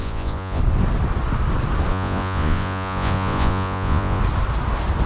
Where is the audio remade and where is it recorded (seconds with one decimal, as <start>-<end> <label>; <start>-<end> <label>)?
0.0-0.6 remade; 0.6-1.9 recorded; 1.9-4.2 remade; 4.2-5.1 recorded